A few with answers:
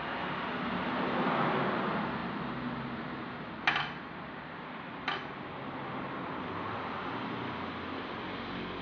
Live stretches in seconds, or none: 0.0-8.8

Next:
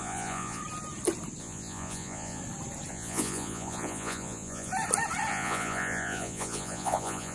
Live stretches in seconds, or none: 0.6-1.4; 2.4-2.9; 4.7-5.3

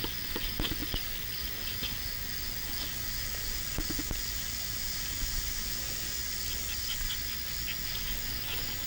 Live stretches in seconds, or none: 0.8-1.4; 6.2-7.8